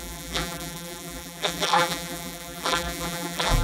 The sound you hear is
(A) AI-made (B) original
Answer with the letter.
A